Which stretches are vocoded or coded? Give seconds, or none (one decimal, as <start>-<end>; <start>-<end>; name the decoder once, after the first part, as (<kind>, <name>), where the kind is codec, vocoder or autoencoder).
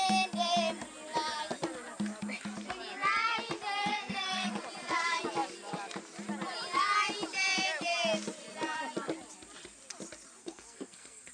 3.9-4.5 (codec, SNAC); 10.4-11.3